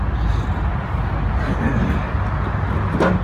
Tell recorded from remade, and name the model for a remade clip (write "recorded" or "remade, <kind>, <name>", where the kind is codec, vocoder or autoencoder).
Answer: recorded